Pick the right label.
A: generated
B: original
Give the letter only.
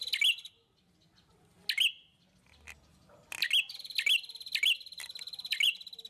B